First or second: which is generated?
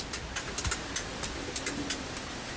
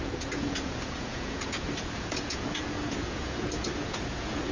second